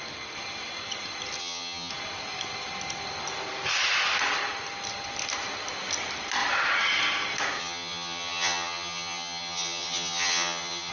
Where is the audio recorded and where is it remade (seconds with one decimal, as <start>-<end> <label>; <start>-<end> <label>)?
0.0-1.4 recorded; 1.4-1.9 remade; 1.9-7.6 recorded; 7.6-10.9 remade